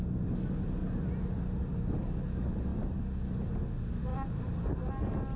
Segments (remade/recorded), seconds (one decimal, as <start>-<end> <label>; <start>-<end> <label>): 0.0-5.4 recorded